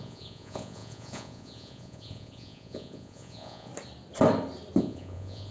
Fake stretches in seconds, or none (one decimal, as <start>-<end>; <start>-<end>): 0.0-3.7; 4.8-5.5